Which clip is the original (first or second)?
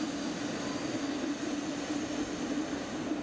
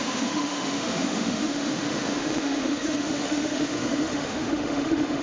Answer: first